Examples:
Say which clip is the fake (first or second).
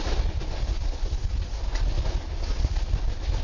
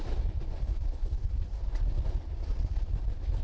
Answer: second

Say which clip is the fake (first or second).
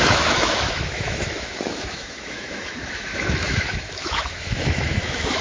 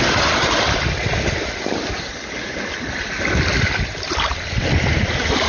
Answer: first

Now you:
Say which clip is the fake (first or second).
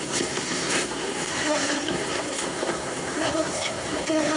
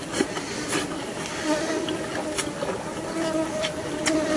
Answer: first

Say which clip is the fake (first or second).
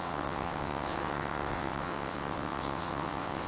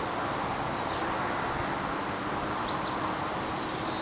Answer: first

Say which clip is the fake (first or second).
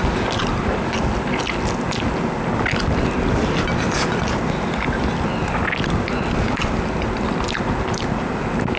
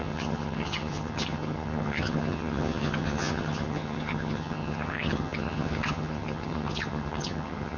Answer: second